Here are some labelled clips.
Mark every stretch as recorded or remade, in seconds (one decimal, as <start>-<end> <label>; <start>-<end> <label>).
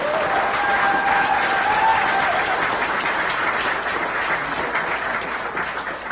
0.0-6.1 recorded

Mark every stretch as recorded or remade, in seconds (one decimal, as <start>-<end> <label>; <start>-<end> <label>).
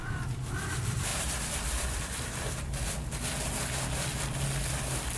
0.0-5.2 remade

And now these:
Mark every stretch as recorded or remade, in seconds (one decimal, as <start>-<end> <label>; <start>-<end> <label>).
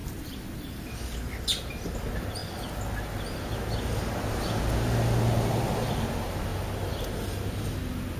0.0-0.6 remade; 0.6-8.2 recorded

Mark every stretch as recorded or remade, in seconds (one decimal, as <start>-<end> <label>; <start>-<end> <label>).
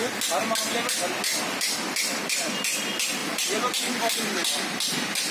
0.0-1.3 recorded; 1.3-2.2 remade; 2.2-3.2 recorded; 3.2-5.3 remade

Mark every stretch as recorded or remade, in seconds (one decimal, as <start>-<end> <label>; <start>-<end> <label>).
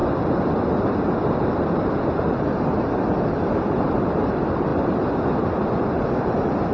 0.0-4.0 recorded; 4.0-4.7 remade; 4.7-6.0 recorded; 6.0-6.7 remade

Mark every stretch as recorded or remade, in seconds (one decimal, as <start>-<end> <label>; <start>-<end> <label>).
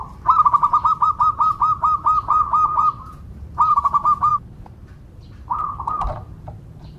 0.0-4.3 remade; 4.3-5.5 recorded; 5.5-7.0 remade